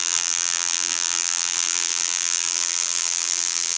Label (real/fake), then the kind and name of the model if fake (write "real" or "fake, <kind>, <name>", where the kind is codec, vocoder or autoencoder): fake, vocoder, BigVGAN v2